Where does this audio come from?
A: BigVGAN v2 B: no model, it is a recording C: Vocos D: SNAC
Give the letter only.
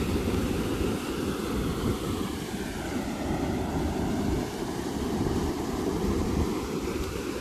A